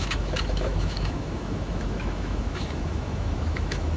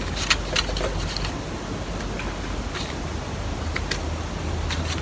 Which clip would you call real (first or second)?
second